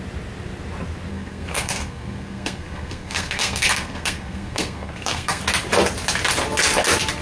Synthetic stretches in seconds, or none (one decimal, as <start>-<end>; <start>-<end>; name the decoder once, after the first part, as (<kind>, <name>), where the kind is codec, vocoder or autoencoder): 1.1-5.4 (codec, SNAC)